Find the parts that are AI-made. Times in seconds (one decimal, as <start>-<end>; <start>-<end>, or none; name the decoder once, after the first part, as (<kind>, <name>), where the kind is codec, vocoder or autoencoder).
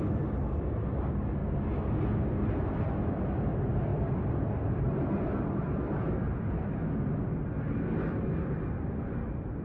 3.9-6.6 (vocoder, BigVGAN v2)